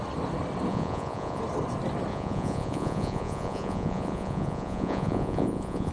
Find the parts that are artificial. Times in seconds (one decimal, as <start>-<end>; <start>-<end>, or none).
0.7-1.4; 2.1-5.9